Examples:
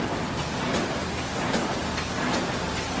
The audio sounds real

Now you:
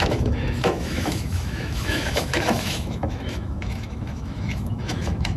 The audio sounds fake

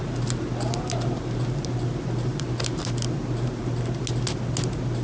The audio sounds real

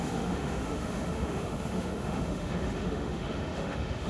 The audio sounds fake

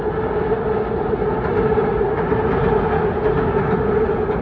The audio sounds real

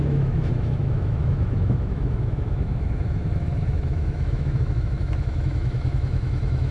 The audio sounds fake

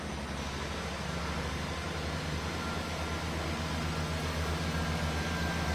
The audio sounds real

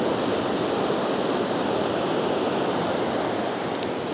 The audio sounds real